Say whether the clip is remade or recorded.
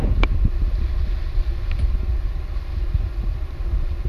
remade